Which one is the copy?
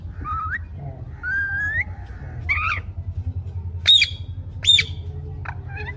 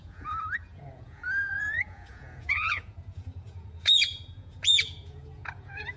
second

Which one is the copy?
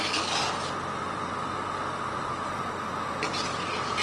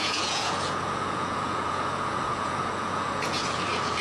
second